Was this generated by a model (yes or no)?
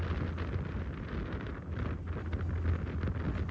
no